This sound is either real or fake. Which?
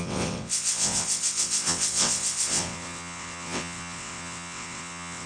fake